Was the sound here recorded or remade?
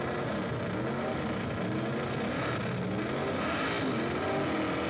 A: recorded